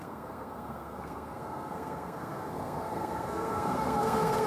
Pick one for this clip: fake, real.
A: fake